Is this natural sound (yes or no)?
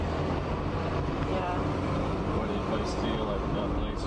no